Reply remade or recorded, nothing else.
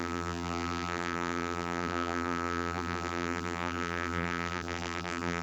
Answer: remade